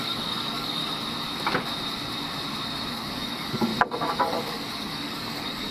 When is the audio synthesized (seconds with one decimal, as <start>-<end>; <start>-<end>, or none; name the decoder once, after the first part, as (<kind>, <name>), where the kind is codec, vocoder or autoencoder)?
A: 0.0-0.8 (codec, DAC); 2.9-3.7; 4.2-5.7